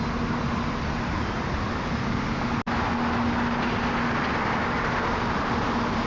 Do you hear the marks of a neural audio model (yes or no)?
no